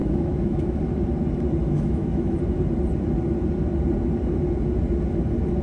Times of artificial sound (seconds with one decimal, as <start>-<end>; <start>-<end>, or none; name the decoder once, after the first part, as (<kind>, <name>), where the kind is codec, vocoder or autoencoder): 0.0-0.8 (autoencoder, DAC-VAE); 1.6-2.4